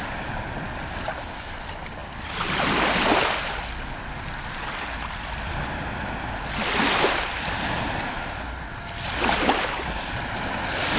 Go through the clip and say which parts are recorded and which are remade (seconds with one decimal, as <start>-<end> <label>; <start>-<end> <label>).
0.0-11.0 recorded